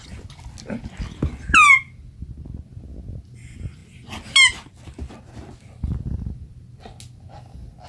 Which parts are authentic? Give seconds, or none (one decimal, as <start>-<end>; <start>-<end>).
0.0-7.9